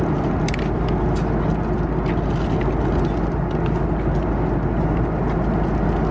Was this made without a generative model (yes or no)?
yes